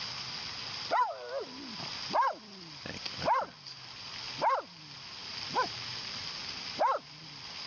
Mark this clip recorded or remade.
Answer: recorded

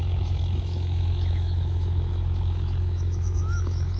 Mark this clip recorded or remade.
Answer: remade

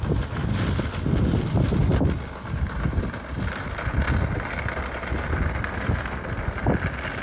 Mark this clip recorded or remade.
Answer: recorded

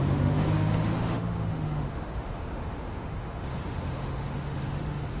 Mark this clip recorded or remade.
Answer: remade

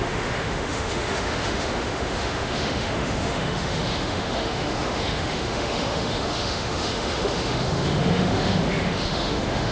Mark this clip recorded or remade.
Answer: remade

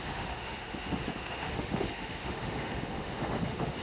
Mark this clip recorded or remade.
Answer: remade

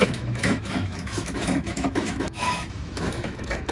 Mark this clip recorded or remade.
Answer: remade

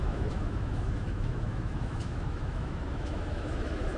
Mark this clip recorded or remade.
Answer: remade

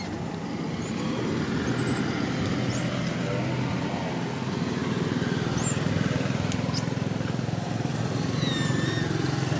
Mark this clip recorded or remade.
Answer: recorded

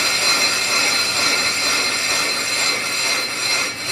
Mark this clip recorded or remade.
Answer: recorded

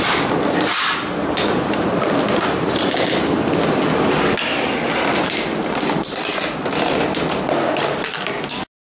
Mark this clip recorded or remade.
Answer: recorded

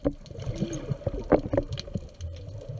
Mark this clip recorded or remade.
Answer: recorded